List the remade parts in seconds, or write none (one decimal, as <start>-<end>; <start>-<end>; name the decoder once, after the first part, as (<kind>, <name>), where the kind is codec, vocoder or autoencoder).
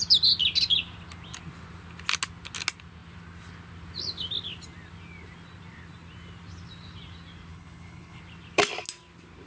7.5-8.2 (codec, HILCodec)